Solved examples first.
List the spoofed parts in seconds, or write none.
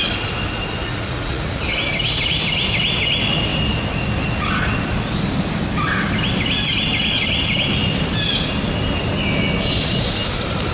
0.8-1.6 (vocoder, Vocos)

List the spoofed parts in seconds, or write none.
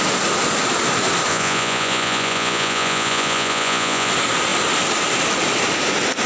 1.3-4.1 (vocoder, Vocos)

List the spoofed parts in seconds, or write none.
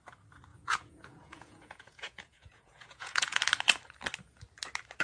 0.5-3.4 (vocoder, Vocos)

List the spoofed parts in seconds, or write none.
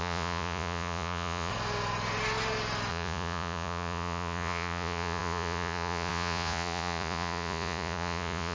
0.0-1.5 (vocoder, Vocos); 2.9-8.5